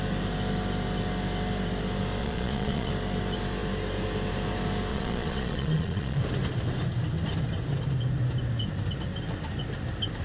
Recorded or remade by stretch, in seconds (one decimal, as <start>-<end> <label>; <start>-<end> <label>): 0.0-2.2 recorded; 2.2-2.9 remade; 2.9-4.9 recorded; 4.9-6.2 remade; 6.2-10.2 recorded